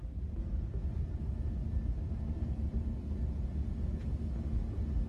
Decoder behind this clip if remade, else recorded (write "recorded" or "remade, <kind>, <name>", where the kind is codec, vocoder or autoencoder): recorded